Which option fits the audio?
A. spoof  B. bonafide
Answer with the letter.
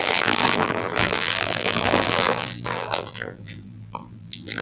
A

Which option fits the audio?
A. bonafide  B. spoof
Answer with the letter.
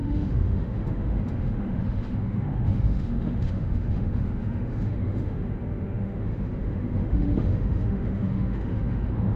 B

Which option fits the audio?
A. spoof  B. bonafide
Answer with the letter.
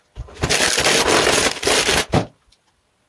B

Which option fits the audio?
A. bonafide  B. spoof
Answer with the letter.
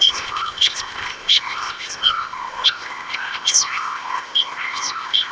B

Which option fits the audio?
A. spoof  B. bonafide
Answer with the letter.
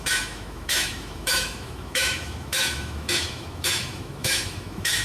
A